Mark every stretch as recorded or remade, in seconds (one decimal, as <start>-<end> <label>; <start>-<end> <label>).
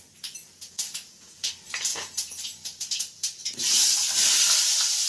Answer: 0.0-0.4 recorded; 0.4-1.5 remade; 1.5-1.9 recorded; 1.9-3.4 remade; 3.4-5.1 recorded